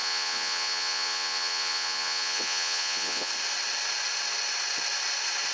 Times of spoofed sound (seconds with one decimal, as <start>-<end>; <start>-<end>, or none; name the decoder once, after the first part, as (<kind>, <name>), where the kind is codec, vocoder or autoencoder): 0.0-3.3 (vocoder, Vocos)